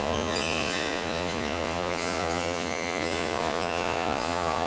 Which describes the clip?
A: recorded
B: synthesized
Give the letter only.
B